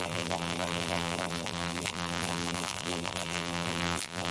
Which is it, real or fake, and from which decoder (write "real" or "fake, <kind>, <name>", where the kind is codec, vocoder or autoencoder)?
fake, vocoder, BigVGAN v2